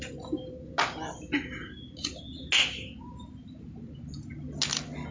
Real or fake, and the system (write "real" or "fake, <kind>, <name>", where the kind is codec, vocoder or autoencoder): real